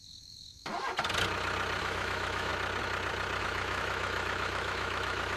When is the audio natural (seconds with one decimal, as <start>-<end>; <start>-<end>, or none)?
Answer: 0.7-1.8; 2.5-3.4